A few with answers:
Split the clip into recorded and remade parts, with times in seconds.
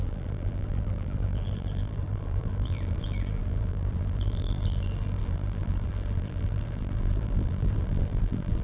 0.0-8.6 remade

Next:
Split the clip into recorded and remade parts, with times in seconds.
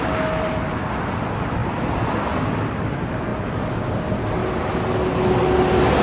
0.0-6.0 recorded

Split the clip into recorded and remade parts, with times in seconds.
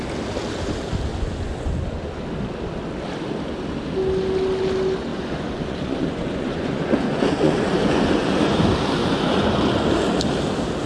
0.0-1.1 recorded; 1.1-1.8 remade; 1.8-5.1 recorded; 5.1-8.6 remade; 8.6-9.0 recorded; 9.0-9.9 remade; 9.9-10.9 recorded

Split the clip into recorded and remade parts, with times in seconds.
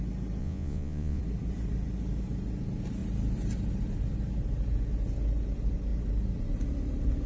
0.0-0.4 recorded; 0.4-1.2 remade; 1.2-7.3 recorded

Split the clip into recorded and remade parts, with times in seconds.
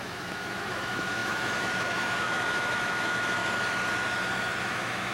0.0-3.4 remade; 3.4-4.6 recorded; 4.6-5.1 remade